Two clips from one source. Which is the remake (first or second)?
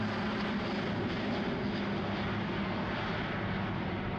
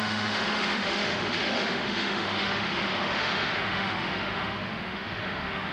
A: second